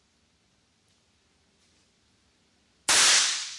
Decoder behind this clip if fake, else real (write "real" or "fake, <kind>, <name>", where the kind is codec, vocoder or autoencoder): real